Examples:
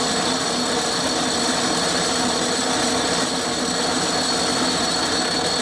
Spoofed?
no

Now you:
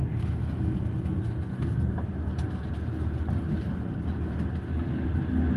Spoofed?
no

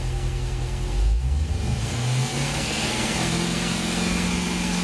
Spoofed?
yes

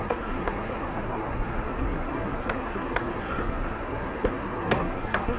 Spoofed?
yes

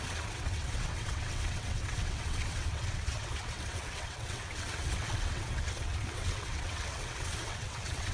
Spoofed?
yes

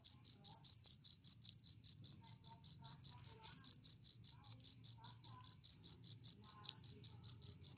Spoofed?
no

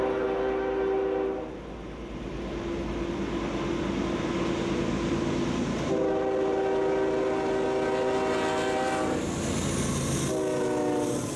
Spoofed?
no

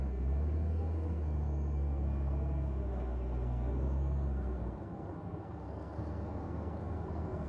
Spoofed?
yes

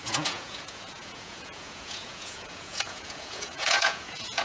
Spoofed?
yes